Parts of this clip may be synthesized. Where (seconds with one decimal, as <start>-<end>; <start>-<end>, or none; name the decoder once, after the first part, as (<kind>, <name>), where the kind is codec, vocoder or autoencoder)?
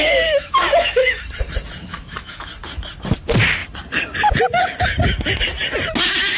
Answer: 0.0-1.2 (autoencoder, DAC-VAE); 1.8-2.5